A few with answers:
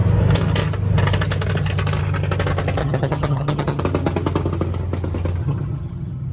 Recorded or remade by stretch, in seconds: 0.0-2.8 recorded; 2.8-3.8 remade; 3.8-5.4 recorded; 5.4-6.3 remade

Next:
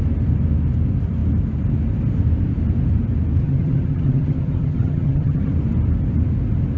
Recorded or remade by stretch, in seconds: 0.0-3.4 recorded; 3.4-5.5 remade; 5.5-6.8 recorded

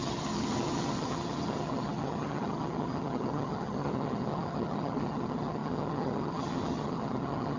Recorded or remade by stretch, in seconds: 0.0-7.6 remade

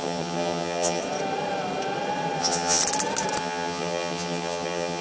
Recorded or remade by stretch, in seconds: 0.0-1.0 remade; 1.0-2.4 recorded; 2.4-2.8 remade; 2.8-3.4 recorded; 3.4-5.0 remade

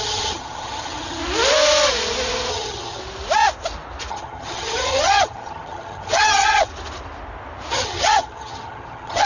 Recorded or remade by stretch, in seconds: 0.0-1.2 remade; 1.2-2.5 recorded; 2.5-3.0 remade; 3.0-4.1 recorded; 4.1-6.7 remade; 6.7-7.7 recorded; 7.7-9.3 remade

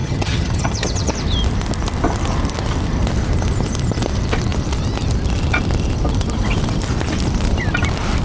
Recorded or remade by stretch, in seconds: 0.0-1.1 remade; 1.1-8.2 recorded

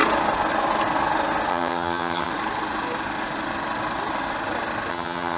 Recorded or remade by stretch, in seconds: 0.0-1.5 recorded; 1.5-2.3 remade; 2.3-4.9 recorded; 4.9-5.4 remade

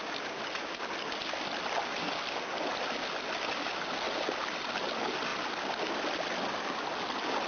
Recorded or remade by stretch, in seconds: 0.0-7.5 recorded